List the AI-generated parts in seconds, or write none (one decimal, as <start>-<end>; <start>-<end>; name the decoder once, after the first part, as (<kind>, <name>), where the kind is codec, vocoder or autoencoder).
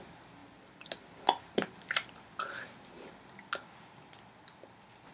none